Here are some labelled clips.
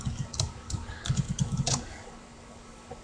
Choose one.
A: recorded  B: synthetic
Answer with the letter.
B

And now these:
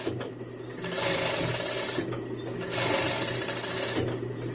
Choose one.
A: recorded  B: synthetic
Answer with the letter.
A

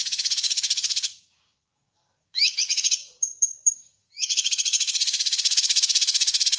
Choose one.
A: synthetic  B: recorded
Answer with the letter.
A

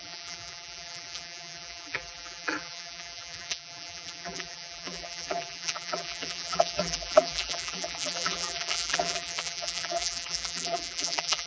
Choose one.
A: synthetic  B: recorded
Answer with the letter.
A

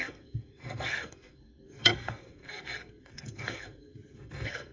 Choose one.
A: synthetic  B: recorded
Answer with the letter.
A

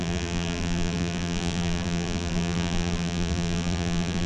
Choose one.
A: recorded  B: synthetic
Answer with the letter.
B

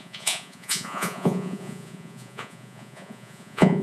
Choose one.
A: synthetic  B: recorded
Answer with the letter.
A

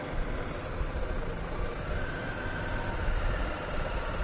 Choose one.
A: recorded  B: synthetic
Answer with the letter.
A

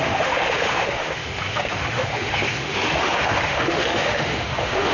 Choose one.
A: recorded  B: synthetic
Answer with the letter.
B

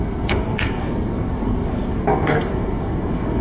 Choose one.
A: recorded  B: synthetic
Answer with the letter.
B